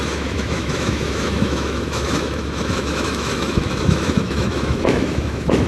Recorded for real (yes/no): no